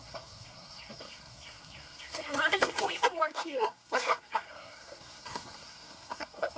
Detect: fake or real fake